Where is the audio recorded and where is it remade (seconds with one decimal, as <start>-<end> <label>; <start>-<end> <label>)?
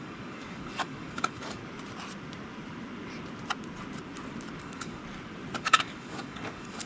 0.0-1.6 remade; 1.6-4.6 recorded; 4.6-5.0 remade; 5.0-5.6 recorded; 5.6-6.9 remade